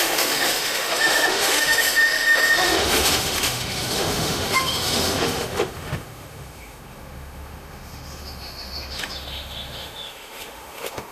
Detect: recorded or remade remade